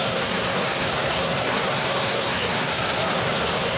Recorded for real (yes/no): no